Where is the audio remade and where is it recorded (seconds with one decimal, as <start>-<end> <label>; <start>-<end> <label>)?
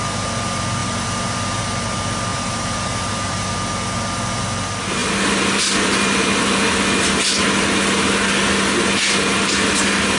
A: 0.0-0.8 recorded; 0.8-1.6 remade; 1.6-2.3 recorded; 2.3-3.5 remade; 3.5-10.2 recorded